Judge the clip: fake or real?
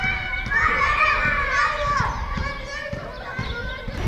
real